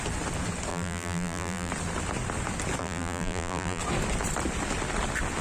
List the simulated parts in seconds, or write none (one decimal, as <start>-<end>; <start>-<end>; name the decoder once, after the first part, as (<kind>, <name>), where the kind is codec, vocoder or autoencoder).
0.7-1.7 (vocoder, BigVGAN v2); 2.8-3.8